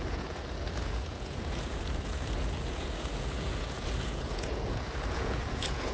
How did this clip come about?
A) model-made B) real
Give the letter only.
A